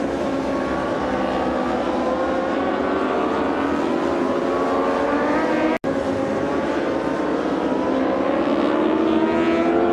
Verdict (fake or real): real